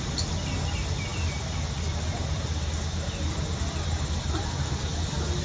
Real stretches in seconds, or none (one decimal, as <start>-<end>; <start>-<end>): 0.0-5.4